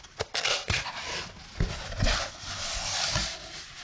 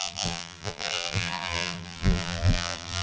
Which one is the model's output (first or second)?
second